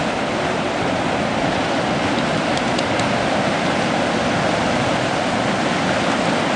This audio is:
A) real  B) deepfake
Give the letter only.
A